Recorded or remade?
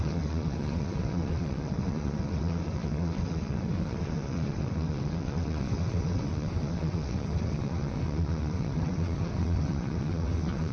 remade